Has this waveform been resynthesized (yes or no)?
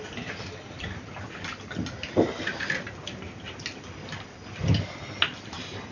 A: no